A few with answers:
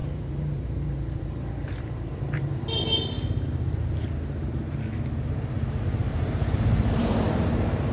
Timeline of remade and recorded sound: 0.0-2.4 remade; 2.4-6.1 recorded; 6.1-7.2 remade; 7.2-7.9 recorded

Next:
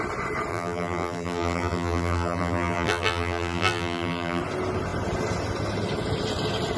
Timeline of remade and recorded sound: 0.0-0.5 recorded; 0.5-4.4 remade; 4.4-6.8 recorded

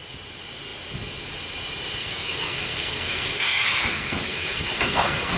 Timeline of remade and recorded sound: 0.0-2.0 recorded; 2.0-5.4 remade

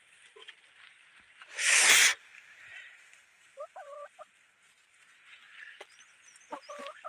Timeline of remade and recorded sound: 0.0-2.1 recorded; 2.1-5.0 remade; 5.0-7.1 recorded

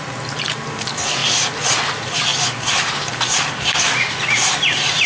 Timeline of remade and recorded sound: 0.0-1.2 remade; 1.2-1.8 recorded; 1.8-5.1 remade

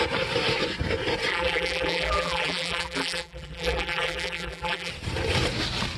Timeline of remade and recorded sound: 0.0-1.3 recorded; 1.3-4.9 remade; 4.9-6.0 recorded

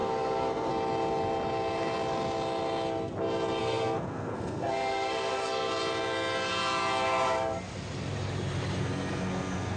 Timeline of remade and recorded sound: 0.0-0.7 remade; 0.7-3.6 recorded; 3.6-5.7 remade; 5.7-8.8 recorded; 8.8-9.8 remade

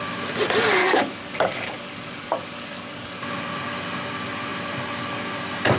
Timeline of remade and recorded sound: 0.0-0.8 recorded; 0.8-3.1 remade; 3.1-5.8 recorded